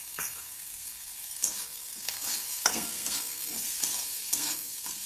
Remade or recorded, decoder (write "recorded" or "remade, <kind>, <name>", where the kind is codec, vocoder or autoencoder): remade, codec, SNAC